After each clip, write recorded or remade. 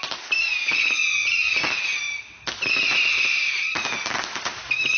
recorded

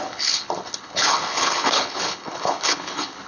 remade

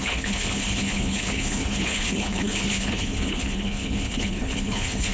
remade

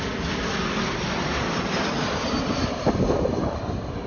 recorded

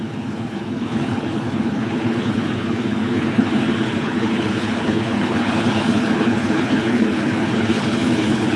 remade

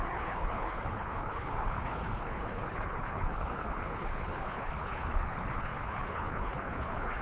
remade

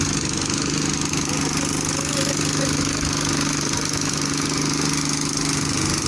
recorded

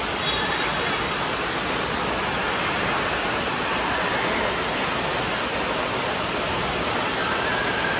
recorded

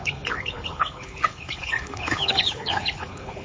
remade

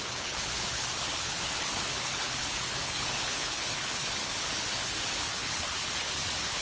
remade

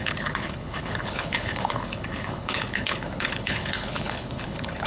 remade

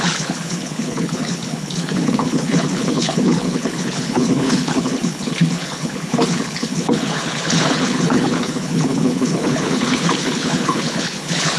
remade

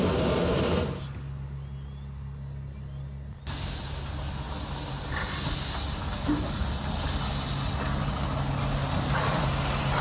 recorded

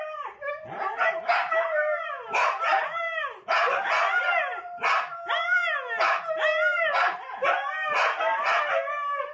recorded